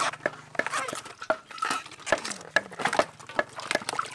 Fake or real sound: real